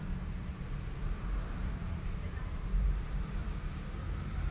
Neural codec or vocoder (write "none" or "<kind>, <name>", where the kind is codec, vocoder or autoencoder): vocoder, BigVGAN v2